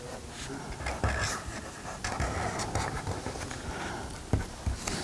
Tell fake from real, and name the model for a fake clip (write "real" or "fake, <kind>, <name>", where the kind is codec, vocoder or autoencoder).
real